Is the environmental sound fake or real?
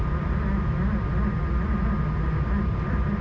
real